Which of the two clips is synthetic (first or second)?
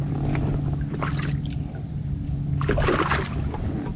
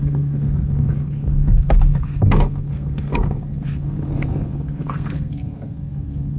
second